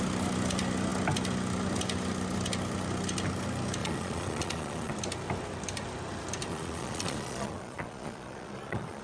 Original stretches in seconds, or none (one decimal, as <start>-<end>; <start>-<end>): 0.0-3.8; 4.9-6.5